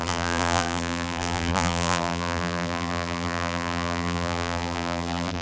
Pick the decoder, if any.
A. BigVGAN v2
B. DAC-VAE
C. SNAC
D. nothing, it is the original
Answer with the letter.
A